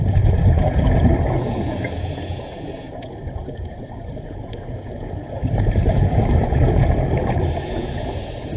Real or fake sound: fake